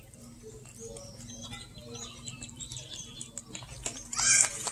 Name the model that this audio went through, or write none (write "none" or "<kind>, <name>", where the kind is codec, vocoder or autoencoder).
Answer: none